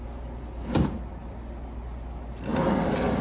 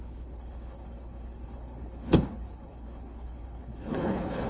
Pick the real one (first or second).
first